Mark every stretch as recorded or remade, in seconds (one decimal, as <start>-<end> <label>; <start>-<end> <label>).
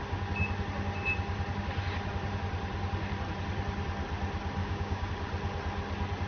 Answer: 0.0-4.6 recorded; 4.6-5.1 remade; 5.1-6.3 recorded